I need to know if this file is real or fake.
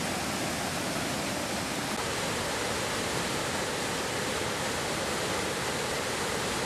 real